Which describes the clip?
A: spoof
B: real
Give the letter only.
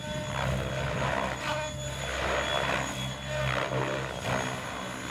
B